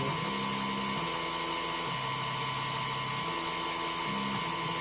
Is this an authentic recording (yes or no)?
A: yes